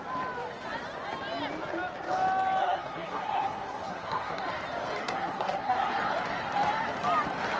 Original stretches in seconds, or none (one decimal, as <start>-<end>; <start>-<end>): 0.0-2.6; 4.4-5.0; 6.0-7.6

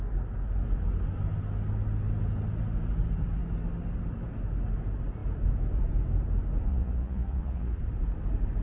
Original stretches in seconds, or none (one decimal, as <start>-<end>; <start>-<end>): 0.0-6.7; 7.8-8.6

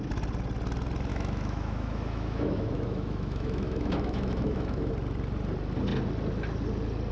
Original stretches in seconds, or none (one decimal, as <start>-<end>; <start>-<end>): 0.0-1.1; 4.9-7.1

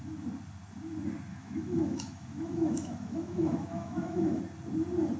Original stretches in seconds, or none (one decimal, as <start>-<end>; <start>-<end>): 0.0-1.3; 4.4-5.2

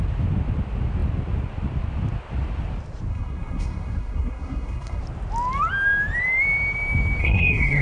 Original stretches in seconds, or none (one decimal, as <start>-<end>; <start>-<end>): 0.0-3.1; 5.0-7.2

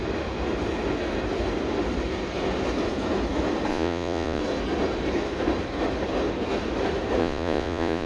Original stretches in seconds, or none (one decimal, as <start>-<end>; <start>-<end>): 0.0-3.7; 4.4-7.2

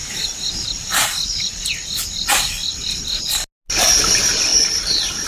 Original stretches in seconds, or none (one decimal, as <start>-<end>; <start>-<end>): 3.2-4.5

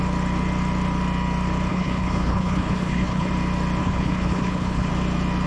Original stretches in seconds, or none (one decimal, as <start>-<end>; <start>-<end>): 0.0-1.7; 3.3-3.8; 4.9-5.5